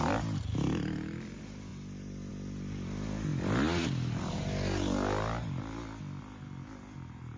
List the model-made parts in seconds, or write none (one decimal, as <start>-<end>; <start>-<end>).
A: none